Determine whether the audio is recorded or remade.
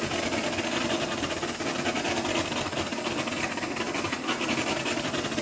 recorded